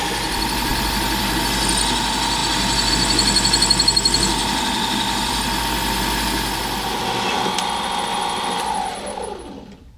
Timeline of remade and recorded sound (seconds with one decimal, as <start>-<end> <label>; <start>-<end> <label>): 0.0-4.4 recorded; 4.4-5.6 remade; 5.6-8.9 recorded; 8.9-10.0 remade

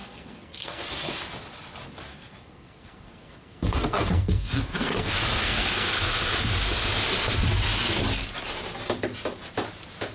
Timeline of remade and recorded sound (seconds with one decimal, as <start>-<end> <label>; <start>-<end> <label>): 0.0-0.9 remade; 0.9-2.1 recorded; 2.1-6.0 remade; 6.0-10.1 recorded

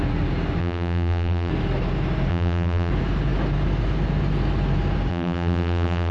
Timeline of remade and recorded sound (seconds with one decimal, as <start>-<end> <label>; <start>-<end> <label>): 0.0-0.6 recorded; 0.6-1.5 remade; 1.5-2.3 recorded; 2.3-2.9 remade; 2.9-5.1 recorded; 5.1-6.1 remade